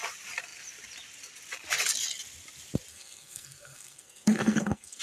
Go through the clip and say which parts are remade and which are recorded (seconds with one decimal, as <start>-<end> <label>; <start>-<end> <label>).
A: 0.0-2.9 recorded; 2.9-5.0 remade